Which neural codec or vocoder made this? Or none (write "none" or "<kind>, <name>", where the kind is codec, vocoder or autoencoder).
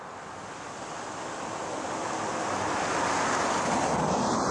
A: none